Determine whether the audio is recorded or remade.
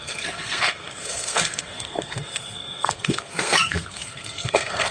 remade